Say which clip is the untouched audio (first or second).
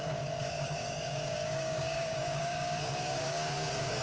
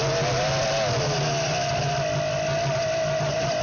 second